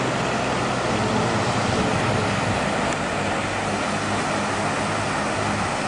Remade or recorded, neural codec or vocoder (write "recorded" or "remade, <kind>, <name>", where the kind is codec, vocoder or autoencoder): recorded